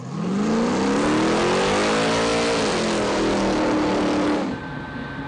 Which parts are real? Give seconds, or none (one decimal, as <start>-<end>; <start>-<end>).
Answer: 0.0-5.3

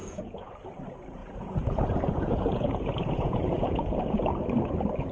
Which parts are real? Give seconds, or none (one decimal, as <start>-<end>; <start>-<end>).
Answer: 0.5-1.2; 4.3-5.1

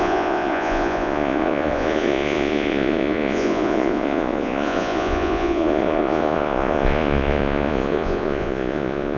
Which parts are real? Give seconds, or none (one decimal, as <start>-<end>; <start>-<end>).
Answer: none

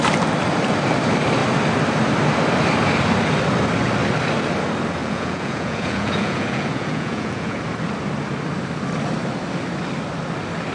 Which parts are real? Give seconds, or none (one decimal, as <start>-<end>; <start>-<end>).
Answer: 0.0-5.0; 7.6-10.7

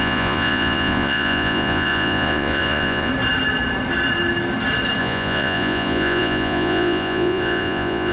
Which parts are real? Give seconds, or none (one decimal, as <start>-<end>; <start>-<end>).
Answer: 3.1-5.0

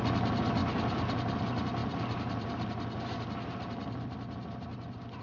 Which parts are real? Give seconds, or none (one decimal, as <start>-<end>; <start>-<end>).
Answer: 0.0-5.2

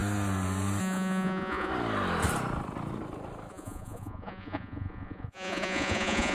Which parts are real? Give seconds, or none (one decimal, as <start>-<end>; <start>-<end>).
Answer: 0.0-0.8; 1.7-3.5